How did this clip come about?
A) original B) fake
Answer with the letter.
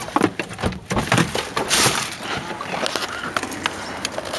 A